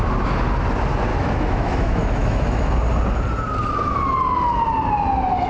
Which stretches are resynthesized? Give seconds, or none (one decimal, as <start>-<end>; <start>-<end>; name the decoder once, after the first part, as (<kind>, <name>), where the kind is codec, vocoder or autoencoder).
1.1-2.7 (autoencoder, DAC-VAE)